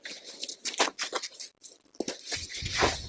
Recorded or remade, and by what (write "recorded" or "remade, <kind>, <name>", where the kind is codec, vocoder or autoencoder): recorded